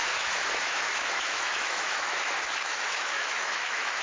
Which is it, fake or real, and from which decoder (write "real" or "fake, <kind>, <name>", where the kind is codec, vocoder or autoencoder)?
fake, autoencoder, DAC-VAE